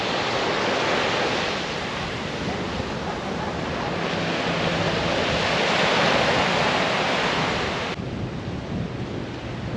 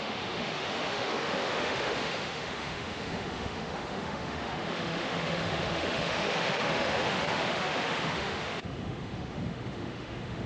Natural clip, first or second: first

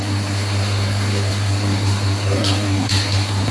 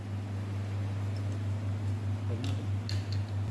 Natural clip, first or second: second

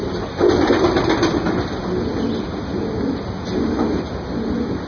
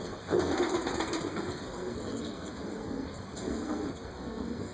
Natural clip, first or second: first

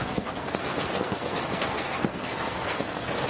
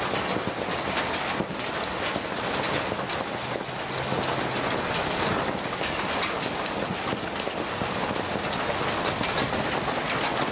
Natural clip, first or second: second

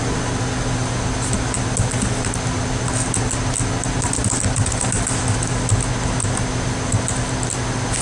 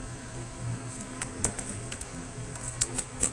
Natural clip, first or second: first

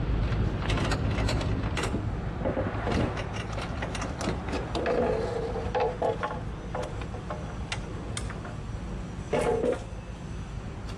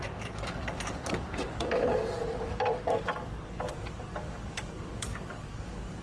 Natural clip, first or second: first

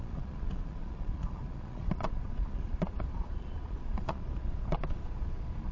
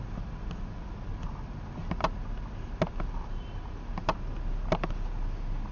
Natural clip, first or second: second